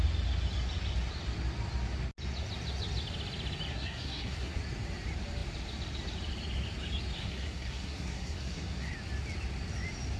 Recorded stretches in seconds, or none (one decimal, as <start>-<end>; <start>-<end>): 0.0-3.7; 4.6-7.2; 8.9-10.2